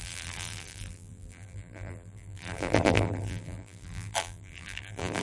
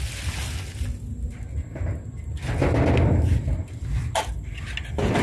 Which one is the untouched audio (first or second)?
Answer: second